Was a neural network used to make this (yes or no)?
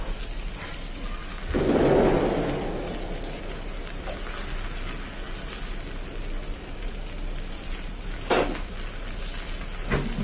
no